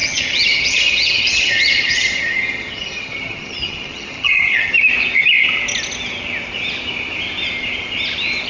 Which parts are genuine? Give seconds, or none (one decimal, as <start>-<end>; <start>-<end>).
4.7-8.5